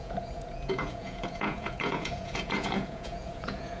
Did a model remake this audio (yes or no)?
yes